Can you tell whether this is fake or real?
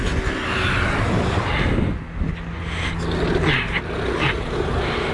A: real